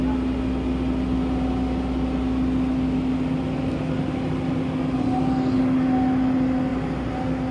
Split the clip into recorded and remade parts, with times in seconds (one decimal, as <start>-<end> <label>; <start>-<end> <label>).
0.0-7.5 recorded